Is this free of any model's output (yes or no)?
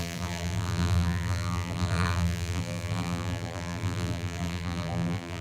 no